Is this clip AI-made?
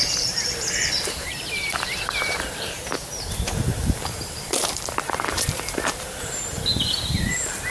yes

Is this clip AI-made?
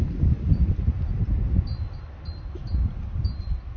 no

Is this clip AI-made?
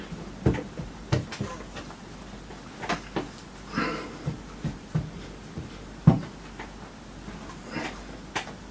no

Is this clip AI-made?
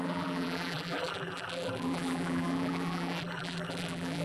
yes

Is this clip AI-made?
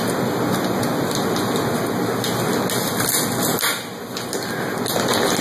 no